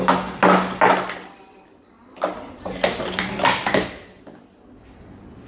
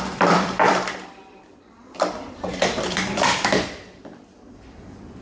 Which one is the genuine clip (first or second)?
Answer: first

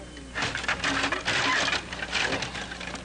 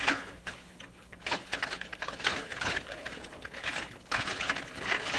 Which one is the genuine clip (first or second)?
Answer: first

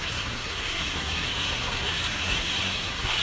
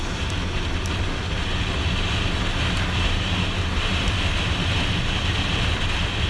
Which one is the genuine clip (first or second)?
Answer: second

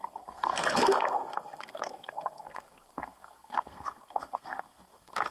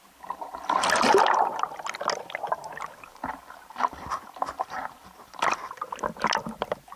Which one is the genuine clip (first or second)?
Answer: second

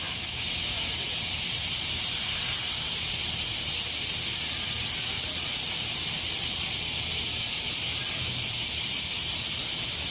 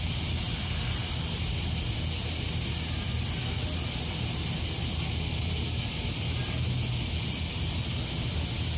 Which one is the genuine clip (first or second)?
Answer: second